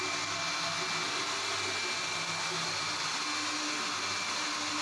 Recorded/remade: recorded